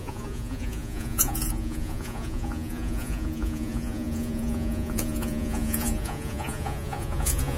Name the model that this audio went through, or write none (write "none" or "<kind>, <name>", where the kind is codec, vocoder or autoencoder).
vocoder, Vocos